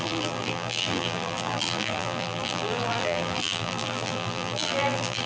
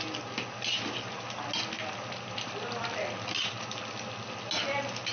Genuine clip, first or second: second